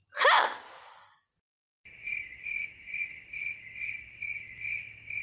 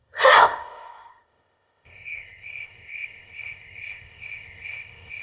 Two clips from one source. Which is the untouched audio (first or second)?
first